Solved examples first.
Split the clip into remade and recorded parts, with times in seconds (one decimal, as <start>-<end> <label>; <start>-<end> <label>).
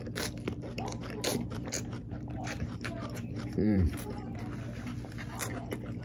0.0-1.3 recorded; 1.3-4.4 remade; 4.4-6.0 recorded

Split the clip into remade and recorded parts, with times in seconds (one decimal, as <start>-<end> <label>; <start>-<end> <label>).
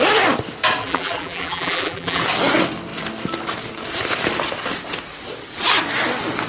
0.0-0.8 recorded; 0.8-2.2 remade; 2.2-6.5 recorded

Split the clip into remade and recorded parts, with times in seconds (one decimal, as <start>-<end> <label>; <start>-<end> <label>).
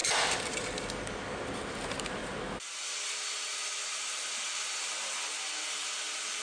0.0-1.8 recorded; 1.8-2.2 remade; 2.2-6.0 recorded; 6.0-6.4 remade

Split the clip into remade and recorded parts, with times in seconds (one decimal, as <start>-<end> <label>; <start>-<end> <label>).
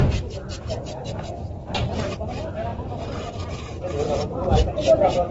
0.0-5.3 recorded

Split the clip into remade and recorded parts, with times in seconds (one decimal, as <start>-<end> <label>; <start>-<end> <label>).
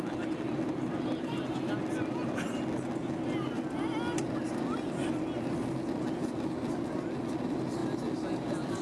0.0-8.8 recorded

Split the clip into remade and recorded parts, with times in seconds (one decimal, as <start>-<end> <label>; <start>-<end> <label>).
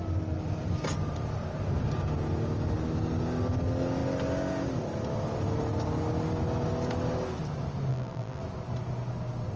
0.0-7.9 recorded; 7.9-8.4 remade; 8.4-9.6 recorded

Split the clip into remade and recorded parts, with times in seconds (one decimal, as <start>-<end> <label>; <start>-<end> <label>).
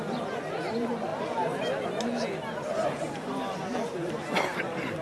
0.0-5.0 recorded